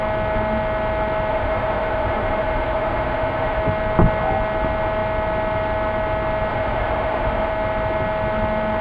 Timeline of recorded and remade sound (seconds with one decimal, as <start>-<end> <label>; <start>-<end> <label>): 0.0-1.3 recorded; 1.3-3.6 remade; 3.6-6.5 recorded; 6.5-7.5 remade; 7.5-8.8 recorded